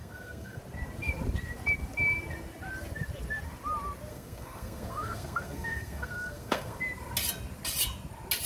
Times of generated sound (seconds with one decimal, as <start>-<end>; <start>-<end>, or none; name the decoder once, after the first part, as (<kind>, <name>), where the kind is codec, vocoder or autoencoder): 0.0-0.6 (codec, SNAC); 4.1-6.8